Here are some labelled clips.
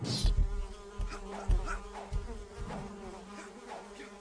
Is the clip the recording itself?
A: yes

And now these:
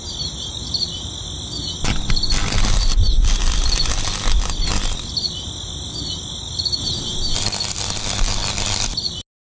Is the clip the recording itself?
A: yes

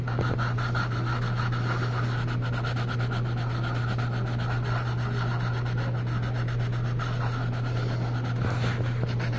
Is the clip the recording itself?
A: yes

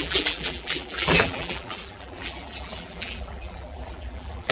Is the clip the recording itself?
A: no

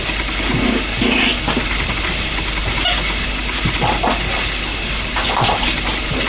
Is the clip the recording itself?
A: yes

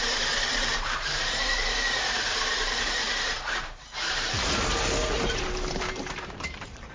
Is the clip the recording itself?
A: no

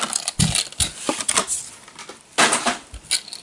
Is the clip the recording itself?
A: yes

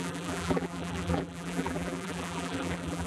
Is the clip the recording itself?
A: no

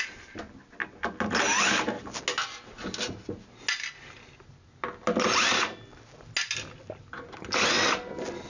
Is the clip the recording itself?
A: yes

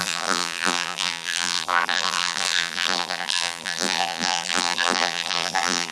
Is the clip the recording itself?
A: no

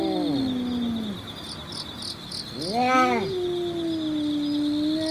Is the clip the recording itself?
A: yes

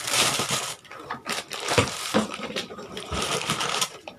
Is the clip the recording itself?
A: no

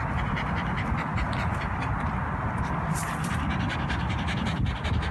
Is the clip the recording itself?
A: no